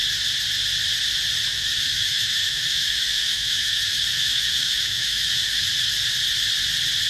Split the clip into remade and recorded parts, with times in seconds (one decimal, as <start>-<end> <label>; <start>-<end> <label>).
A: 0.0-1.5 recorded; 1.5-5.7 remade; 5.7-7.1 recorded